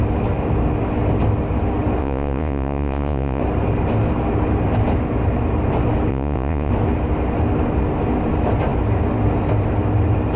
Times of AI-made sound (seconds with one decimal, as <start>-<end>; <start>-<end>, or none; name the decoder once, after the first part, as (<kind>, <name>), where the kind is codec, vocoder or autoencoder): 2.0-3.4 (vocoder, Vocos); 6.1-6.7